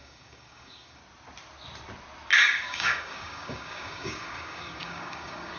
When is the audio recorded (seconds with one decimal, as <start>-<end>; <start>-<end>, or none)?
1.0-2.4

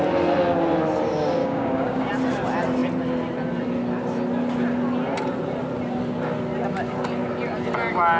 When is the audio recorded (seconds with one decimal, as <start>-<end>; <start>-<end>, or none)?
0.0-1.4; 2.1-8.2

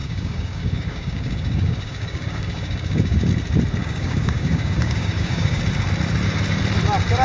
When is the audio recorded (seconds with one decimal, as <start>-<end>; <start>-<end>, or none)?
3.3-3.8; 5.6-7.2

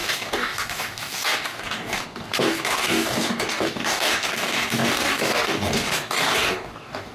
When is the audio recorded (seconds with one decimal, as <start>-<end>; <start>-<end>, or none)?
none

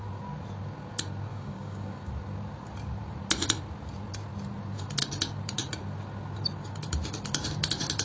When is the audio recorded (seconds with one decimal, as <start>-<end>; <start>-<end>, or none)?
0.0-1.3; 2.1-8.0